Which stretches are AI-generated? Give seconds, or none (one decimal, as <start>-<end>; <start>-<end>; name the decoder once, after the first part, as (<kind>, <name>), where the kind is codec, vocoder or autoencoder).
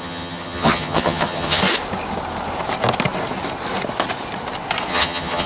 0.0-1.6 (vocoder, HiFi-GAN); 4.9-5.5